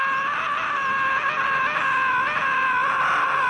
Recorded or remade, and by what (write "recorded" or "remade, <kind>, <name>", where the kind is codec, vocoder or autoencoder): recorded